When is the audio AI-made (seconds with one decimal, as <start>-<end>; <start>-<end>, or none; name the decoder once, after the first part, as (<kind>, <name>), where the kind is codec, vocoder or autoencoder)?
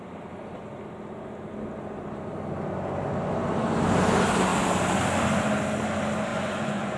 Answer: 6.3-7.0 (vocoder, Vocos)